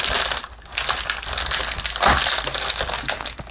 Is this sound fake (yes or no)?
no